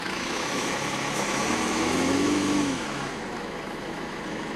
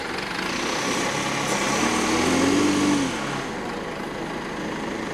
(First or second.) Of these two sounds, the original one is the second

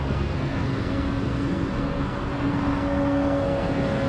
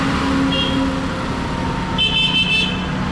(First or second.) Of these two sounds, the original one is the second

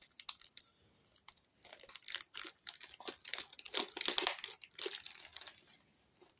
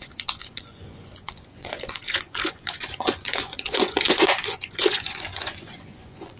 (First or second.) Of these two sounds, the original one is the first